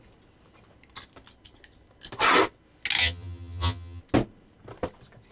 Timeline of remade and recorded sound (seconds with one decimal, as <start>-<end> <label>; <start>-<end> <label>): 0.0-3.0 recorded; 3.0-4.0 remade; 4.0-5.3 recorded